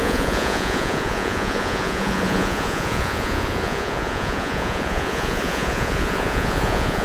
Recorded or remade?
remade